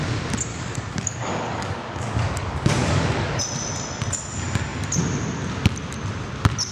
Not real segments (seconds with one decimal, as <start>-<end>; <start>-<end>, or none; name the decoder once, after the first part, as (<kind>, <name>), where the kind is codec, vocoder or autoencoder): 0.5-3.4 (codec, DAC)